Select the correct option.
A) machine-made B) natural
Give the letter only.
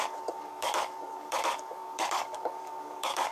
A